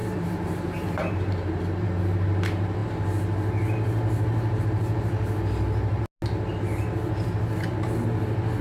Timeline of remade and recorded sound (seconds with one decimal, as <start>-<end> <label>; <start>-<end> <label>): 0.0-2.0 remade; 2.0-8.6 recorded

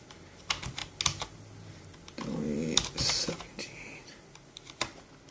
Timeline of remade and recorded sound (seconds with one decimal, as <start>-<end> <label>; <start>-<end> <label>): 0.0-5.3 recorded

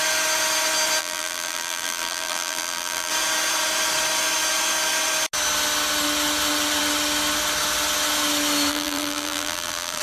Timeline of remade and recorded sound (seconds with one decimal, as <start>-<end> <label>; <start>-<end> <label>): 0.0-1.0 recorded; 1.0-3.1 remade; 3.1-8.7 recorded; 8.7-10.0 remade

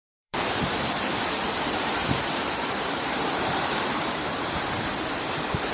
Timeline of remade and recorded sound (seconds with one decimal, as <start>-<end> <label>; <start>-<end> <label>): 0.0-5.7 remade